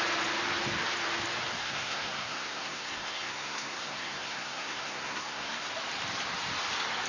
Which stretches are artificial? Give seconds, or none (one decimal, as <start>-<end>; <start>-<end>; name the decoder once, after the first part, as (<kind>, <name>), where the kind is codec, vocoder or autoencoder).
1.6-5.7 (codec, SNAC)